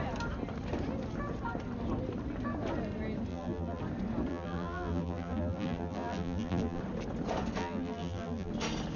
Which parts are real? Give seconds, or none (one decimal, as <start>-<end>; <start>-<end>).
0.0-3.3; 3.8-4.3; 6.8-7.6; 8.5-9.0